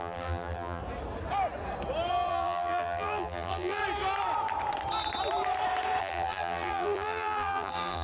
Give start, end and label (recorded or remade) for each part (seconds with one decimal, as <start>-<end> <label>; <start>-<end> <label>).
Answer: 0.0-0.8 remade; 0.8-2.3 recorded; 2.3-3.8 remade; 3.8-6.0 recorded; 6.0-8.0 remade